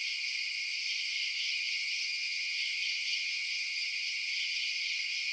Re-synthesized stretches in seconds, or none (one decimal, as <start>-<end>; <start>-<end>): 1.5-4.7